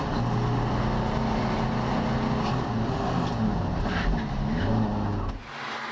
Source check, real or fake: real